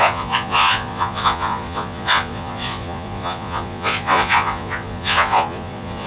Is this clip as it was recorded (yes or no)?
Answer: no